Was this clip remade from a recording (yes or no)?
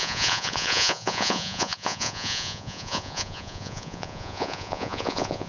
yes